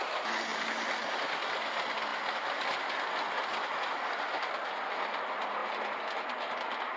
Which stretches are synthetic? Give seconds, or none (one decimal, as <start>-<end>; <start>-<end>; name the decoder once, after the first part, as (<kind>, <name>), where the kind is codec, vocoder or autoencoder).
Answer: none

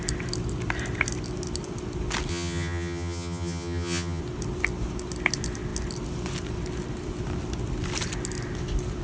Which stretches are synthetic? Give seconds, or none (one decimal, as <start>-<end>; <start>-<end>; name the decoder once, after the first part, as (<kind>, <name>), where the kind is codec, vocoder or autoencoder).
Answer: 2.3-4.2 (vocoder, HiFi-GAN)

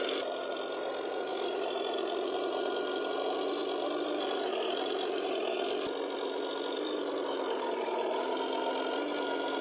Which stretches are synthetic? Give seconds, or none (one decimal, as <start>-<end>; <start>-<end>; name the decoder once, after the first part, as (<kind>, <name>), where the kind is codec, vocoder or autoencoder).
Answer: 1.3-2.4 (vocoder, BigVGAN v2); 3.6-7.0

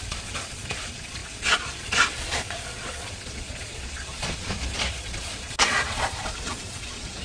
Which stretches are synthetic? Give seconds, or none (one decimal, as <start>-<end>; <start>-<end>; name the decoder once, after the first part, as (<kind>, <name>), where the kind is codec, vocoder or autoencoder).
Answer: 0.0-7.2 (vocoder, Vocos)

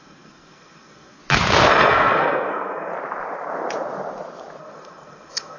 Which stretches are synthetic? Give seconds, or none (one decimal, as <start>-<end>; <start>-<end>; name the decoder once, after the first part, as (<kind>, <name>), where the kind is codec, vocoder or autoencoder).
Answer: 0.0-1.2 (codec, SNAC); 1.7-2.9; 4.6-5.6

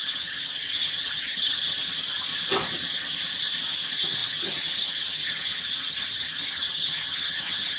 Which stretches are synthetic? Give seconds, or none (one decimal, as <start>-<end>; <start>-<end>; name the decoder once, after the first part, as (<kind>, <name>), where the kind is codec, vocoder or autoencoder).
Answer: 0.0-2.3 (vocoder, HiFi-GAN); 3.6-7.8

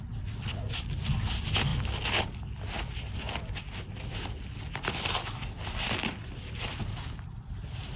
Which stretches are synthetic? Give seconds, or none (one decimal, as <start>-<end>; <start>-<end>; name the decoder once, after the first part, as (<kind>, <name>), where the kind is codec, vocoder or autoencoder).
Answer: none